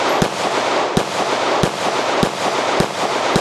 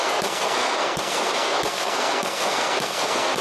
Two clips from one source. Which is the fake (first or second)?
second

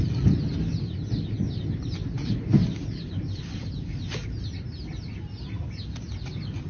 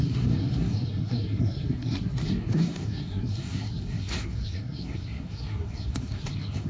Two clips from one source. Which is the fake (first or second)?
second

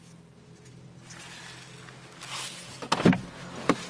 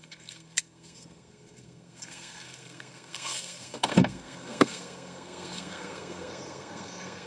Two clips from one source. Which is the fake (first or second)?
second